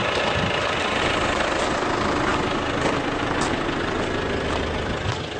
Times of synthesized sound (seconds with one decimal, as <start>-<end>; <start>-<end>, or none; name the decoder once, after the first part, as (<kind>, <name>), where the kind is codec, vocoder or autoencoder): none